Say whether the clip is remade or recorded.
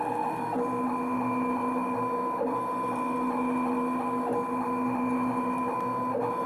recorded